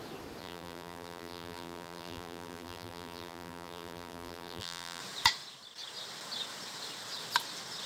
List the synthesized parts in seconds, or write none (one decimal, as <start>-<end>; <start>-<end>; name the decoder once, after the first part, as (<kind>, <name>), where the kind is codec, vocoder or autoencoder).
0.4-5.0 (vocoder, BigVGAN v2)